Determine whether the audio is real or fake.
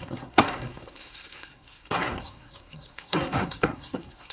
fake